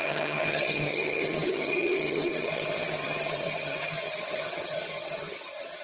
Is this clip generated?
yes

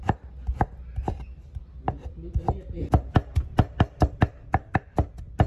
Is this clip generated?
no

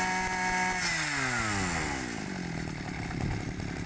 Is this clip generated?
no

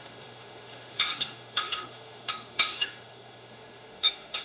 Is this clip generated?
yes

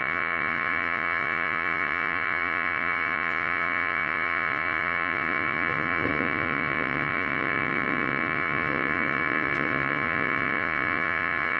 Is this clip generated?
yes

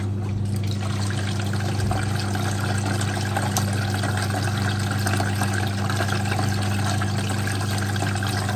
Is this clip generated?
no